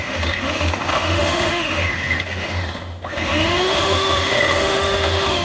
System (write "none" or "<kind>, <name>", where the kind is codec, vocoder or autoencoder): autoencoder, DAC-VAE